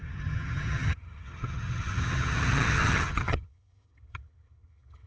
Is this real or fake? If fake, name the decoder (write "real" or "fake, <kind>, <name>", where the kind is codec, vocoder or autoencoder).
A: fake, vocoder, HiFi-GAN